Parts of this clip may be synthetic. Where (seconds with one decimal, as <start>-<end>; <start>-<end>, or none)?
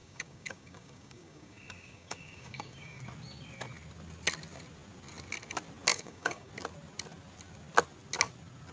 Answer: 0.0-3.0; 5.9-6.5